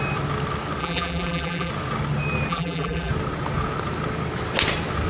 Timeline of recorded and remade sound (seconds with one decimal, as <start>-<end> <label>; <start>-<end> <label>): 0.0-0.8 recorded; 0.8-1.7 remade; 1.7-2.5 recorded; 2.5-3.1 remade; 3.1-5.1 recorded